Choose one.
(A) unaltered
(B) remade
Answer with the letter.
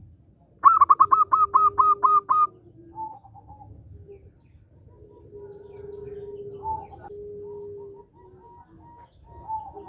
A